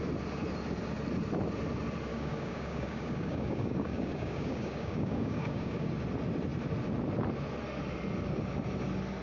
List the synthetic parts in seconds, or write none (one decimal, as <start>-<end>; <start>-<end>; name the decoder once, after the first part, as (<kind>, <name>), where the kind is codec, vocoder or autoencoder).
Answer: 2.1-5.9 (codec, DAC)